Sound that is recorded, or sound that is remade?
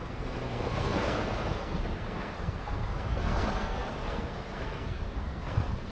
remade